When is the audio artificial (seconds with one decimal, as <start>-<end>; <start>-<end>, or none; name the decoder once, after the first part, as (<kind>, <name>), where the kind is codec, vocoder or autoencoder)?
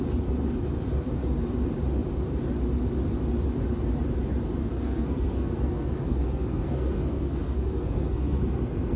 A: 4.6-9.0 (codec, SNAC)